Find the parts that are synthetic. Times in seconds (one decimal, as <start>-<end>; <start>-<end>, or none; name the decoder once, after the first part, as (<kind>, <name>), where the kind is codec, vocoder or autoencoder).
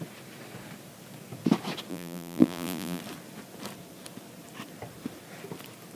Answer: 1.9-3.0 (vocoder, BigVGAN v2)